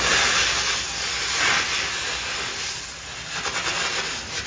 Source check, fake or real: real